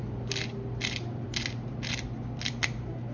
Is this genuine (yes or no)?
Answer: yes